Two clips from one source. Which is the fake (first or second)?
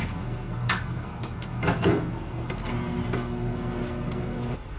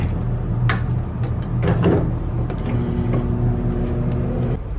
first